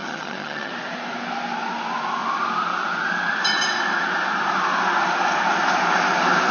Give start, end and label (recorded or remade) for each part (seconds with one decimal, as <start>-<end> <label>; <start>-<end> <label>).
0.0-0.7 remade; 0.7-6.5 recorded